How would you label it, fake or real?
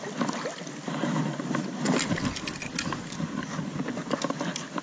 real